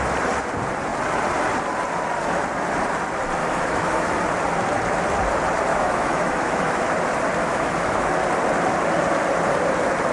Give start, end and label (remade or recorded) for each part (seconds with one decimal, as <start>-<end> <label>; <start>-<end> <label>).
0.0-3.4 recorded; 3.4-4.2 remade; 4.2-5.7 recorded; 5.7-6.8 remade; 6.8-7.4 recorded; 7.4-8.1 remade; 8.1-10.1 recorded